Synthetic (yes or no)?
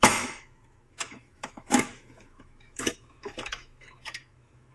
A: yes